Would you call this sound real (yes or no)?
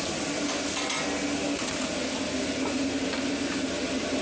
yes